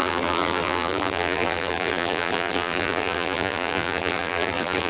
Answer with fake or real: fake